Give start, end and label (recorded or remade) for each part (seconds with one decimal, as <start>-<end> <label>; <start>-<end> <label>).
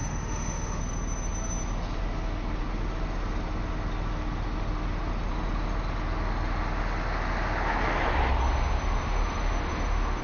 0.0-0.8 remade; 0.8-8.4 recorded; 8.4-10.2 remade